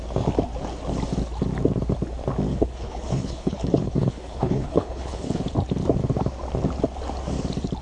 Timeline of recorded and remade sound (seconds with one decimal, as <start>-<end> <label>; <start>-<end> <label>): 0.0-2.5 recorded; 2.5-5.4 remade; 5.4-7.8 recorded